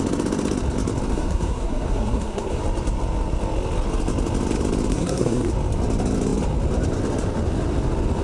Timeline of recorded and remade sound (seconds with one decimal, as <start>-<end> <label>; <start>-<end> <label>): 0.0-1.1 recorded; 1.1-2.6 remade; 2.6-4.9 recorded; 4.9-5.5 remade; 5.5-8.2 recorded